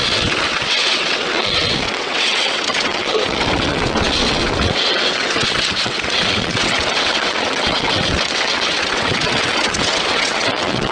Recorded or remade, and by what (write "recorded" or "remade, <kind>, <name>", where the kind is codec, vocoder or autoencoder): remade, vocoder, WaveNeXt